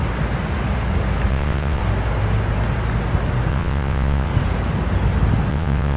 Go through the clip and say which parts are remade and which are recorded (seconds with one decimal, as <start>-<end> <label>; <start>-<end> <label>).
0.0-1.3 recorded; 1.3-1.8 remade; 1.8-3.5 recorded; 3.5-4.3 remade; 4.3-5.5 recorded; 5.5-6.0 remade